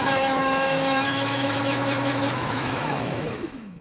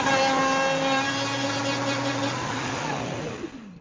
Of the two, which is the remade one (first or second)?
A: first